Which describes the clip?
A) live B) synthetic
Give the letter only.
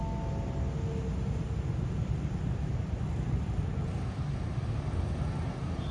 A